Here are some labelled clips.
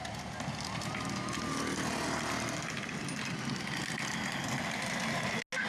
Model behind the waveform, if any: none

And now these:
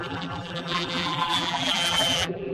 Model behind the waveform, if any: vocoder, BigVGAN v2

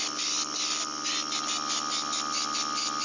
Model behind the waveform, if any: none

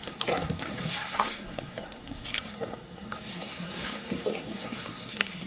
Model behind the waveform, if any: codec, SNAC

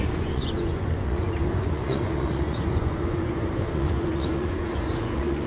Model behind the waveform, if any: vocoder, Vocos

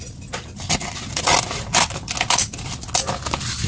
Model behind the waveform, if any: none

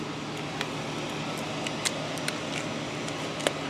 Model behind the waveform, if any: none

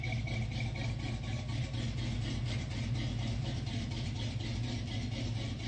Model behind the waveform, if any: none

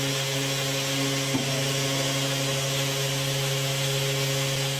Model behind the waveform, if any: none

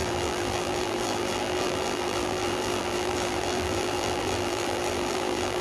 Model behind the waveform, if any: vocoder, BigVGAN v2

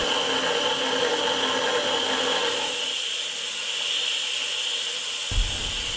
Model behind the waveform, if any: none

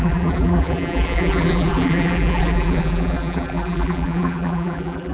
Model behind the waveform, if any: vocoder, BigVGAN v2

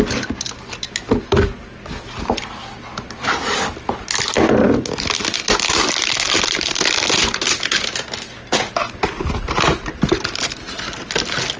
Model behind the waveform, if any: none